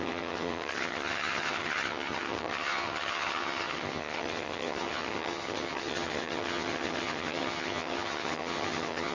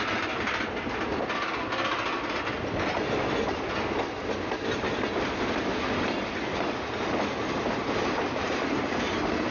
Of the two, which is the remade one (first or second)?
first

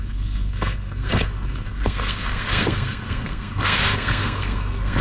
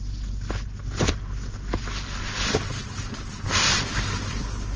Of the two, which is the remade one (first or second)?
first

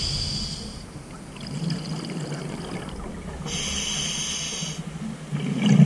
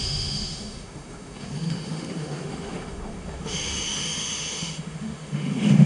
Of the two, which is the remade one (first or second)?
second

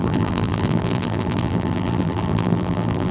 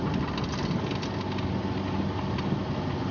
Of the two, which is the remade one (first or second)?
first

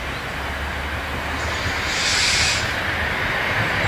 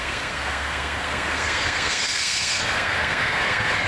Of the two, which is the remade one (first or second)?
second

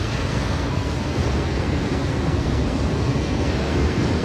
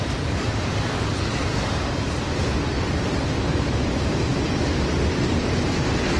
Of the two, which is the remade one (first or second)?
first